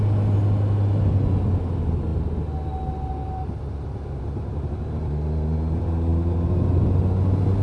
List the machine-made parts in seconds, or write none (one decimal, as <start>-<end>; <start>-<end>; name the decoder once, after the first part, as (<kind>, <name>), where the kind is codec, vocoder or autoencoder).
none